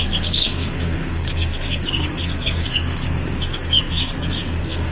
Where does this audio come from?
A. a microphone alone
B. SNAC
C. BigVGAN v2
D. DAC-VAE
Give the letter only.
B